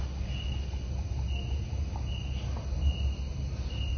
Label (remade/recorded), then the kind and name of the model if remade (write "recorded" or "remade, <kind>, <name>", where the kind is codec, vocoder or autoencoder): recorded